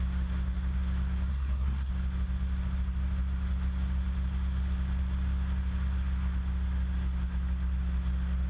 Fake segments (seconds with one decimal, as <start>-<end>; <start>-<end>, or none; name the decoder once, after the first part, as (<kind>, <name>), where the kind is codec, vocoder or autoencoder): 1.3-1.9 (codec, SNAC)